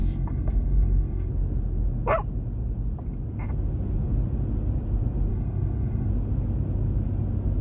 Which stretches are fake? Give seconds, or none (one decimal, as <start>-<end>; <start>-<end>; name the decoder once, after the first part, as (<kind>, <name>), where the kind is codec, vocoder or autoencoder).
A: 0.0-1.3 (codec, SNAC); 5.3-6.1